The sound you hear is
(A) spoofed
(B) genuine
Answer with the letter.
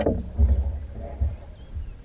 B